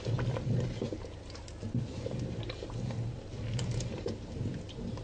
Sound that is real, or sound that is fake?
real